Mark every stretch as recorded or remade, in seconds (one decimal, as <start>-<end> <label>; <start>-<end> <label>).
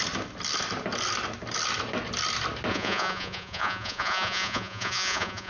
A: 0.0-2.7 recorded; 2.7-5.5 remade